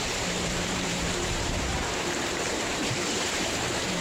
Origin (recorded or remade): remade